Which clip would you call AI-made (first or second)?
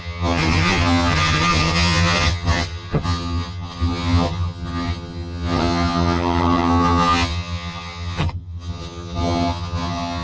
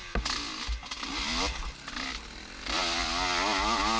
first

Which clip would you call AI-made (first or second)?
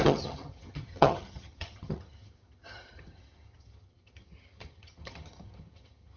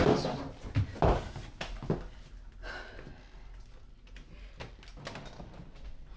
first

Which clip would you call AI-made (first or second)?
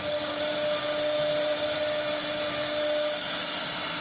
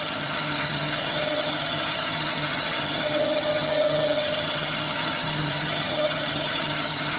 second